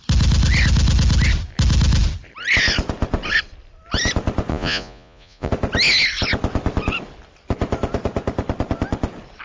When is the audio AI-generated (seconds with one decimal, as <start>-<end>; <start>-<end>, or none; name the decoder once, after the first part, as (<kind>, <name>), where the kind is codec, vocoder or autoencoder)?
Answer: 4.5-5.5 (vocoder, Vocos)